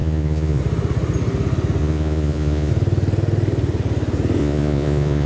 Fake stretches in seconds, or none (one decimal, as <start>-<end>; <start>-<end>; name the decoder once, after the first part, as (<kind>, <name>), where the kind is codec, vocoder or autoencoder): 0.0-0.6 (vocoder, Vocos); 1.8-2.7; 4.4-5.3